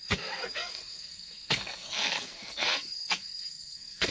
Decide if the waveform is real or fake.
fake